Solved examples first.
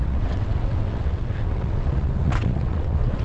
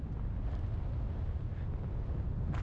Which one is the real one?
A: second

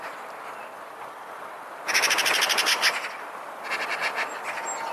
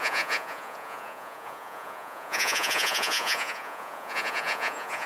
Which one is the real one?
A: first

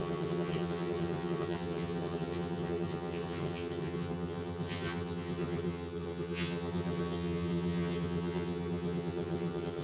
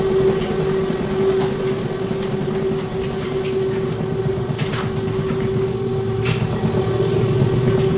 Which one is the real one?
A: second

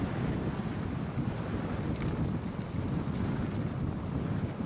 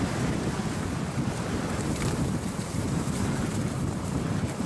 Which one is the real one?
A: first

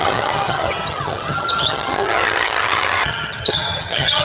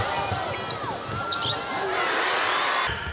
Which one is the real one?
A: second